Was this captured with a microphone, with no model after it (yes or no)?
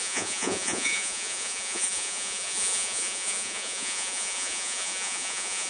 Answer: no